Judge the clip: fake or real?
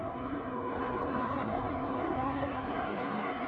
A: fake